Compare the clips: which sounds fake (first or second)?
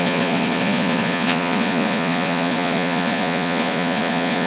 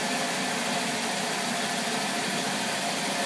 first